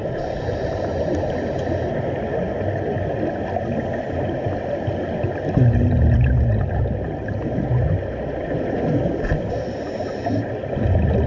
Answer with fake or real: real